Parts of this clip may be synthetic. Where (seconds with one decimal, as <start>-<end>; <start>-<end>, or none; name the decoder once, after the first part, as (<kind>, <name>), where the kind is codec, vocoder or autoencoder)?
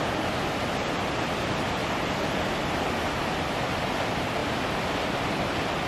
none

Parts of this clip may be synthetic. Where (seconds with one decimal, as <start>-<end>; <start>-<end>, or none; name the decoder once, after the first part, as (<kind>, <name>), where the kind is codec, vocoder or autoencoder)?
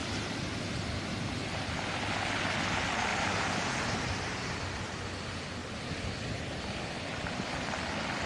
0.0-0.7 (vocoder, BigVGAN v2); 3.1-3.7; 5.6-6.5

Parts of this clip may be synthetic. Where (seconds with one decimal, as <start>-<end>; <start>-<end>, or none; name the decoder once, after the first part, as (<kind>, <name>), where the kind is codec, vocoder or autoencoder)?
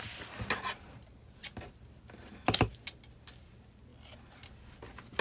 none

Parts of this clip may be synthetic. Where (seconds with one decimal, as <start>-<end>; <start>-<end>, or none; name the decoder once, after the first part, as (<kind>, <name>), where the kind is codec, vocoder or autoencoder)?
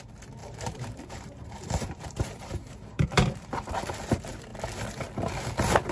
0.4-3.9 (vocoder, BigVGAN v2)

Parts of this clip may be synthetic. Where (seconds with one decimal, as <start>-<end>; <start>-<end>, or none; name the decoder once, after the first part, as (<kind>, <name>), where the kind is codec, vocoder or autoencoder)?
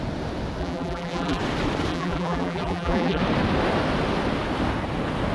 0.6-1.4 (vocoder, BigVGAN v2); 1.9-3.2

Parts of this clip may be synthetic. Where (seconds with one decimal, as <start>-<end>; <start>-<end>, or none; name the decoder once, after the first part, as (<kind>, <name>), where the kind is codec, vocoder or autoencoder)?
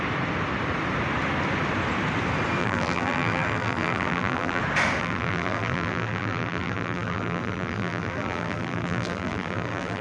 2.6-4.6 (vocoder, BigVGAN v2); 5.0-10.0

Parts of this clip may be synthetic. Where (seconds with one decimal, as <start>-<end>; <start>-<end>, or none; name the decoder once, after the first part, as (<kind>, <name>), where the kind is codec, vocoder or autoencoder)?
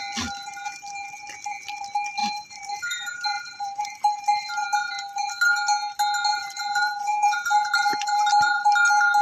2.2-4.6 (vocoder, BigVGAN v2); 6.3-8.7